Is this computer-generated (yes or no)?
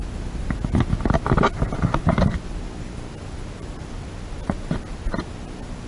no